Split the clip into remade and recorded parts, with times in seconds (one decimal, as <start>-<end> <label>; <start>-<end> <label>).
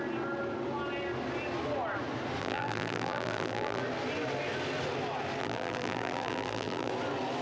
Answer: 0.0-2.4 recorded; 2.4-3.8 remade; 3.8-5.4 recorded; 5.4-6.9 remade; 6.9-7.4 recorded